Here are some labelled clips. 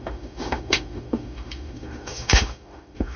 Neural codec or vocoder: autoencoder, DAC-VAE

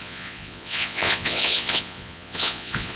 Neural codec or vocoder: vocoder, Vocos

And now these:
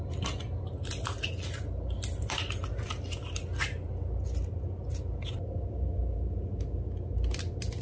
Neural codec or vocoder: none